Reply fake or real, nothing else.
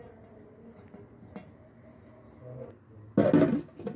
real